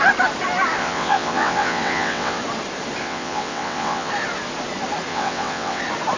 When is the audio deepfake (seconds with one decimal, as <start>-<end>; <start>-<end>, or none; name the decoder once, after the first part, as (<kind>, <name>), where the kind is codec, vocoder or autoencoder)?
0.8-2.4 (vocoder, WaveNeXt); 3.0-4.1; 5.1-5.8